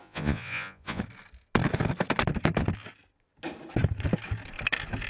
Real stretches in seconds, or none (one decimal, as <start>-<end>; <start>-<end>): 1.0-5.1

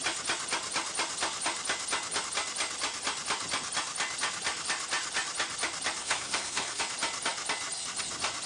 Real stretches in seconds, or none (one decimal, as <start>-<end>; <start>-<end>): 0.0-6.0; 6.8-8.5